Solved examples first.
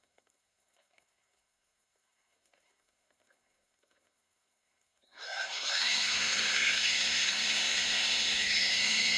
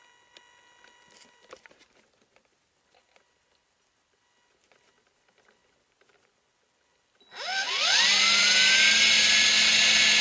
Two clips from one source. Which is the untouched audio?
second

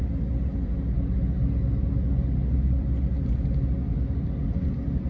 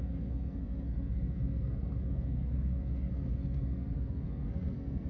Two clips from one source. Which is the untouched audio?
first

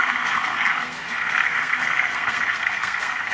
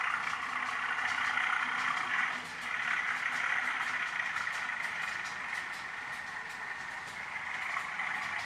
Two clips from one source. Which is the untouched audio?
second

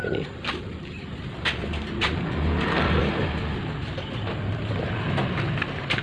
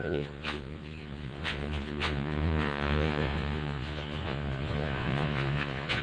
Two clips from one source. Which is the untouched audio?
first